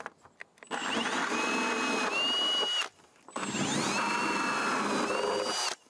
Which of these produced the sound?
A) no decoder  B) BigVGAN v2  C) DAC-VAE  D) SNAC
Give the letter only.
A